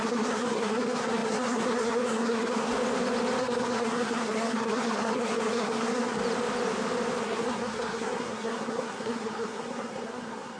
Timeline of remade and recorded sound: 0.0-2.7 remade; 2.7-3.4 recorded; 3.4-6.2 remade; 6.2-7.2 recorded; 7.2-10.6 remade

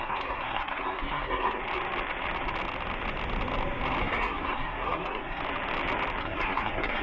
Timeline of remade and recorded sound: 0.0-1.6 remade; 1.6-4.0 recorded; 4.0-5.4 remade; 5.4-6.2 recorded; 6.2-7.0 remade

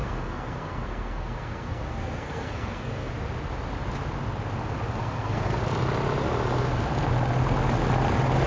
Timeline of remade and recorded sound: 0.0-3.1 remade; 3.1-5.0 recorded; 5.0-5.6 remade; 5.6-8.5 recorded

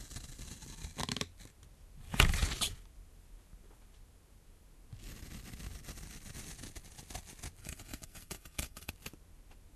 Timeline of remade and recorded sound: 0.0-7.6 recorded; 7.6-8.9 remade; 8.9-9.8 recorded

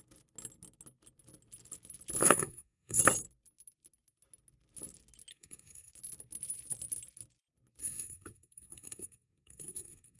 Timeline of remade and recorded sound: 0.0-2.2 recorded; 2.2-3.0 remade; 3.0-5.3 recorded; 5.3-5.9 remade; 5.9-7.8 recorded; 7.8-10.2 remade

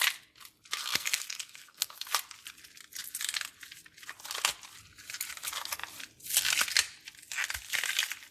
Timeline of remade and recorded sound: 0.0-0.8 recorded; 0.8-2.1 remade; 2.1-8.3 recorded

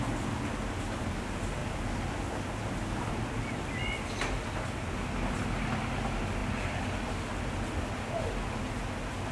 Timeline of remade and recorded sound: 0.0-9.3 recorded